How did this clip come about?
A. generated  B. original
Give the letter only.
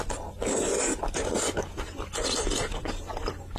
B